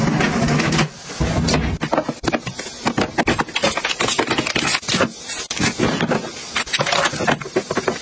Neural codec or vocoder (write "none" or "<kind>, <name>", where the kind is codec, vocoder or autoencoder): none